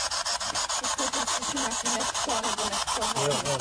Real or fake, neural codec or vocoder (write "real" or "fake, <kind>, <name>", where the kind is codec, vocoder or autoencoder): real